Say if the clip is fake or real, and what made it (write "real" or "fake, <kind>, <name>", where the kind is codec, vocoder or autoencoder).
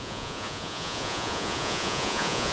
fake, vocoder, Vocos